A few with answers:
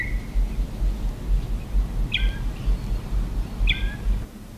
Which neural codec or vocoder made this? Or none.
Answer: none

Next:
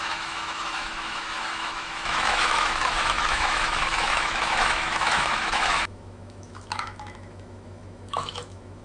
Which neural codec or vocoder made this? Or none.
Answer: autoencoder, DAC-VAE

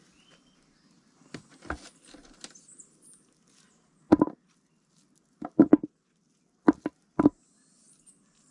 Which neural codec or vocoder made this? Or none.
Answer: none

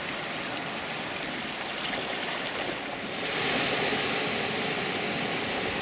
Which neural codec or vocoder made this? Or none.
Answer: none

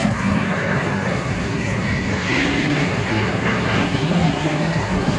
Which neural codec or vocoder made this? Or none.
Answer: codec, SNAC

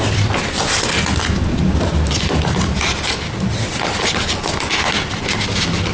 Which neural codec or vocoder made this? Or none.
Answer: none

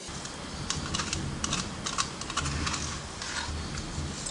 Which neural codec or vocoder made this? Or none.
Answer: none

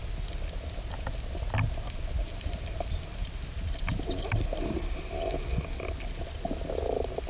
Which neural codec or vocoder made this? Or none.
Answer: none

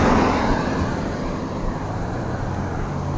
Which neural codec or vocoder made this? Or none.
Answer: none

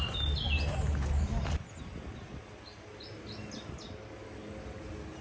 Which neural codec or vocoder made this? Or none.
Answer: none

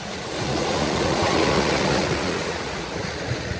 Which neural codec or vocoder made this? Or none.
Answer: vocoder, Vocos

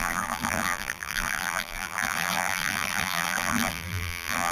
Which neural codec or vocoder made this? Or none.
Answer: vocoder, BigVGAN v2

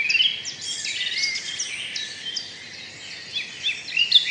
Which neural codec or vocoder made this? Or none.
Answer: none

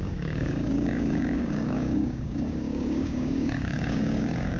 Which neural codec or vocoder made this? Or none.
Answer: codec, DAC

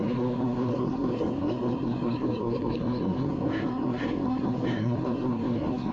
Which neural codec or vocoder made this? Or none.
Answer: codec, SNAC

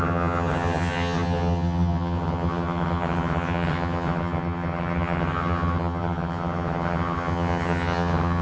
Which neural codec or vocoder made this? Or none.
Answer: vocoder, HiFi-GAN